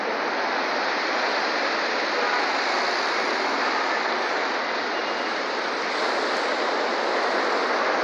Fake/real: real